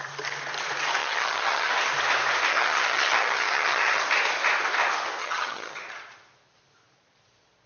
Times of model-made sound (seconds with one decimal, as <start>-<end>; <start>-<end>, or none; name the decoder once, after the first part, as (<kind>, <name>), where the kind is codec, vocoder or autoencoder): 1.0-1.7 (vocoder, HiFi-GAN); 2.5-4.0; 5.2-5.8